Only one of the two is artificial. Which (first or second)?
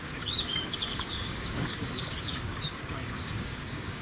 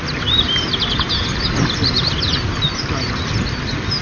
first